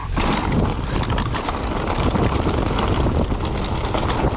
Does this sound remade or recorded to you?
recorded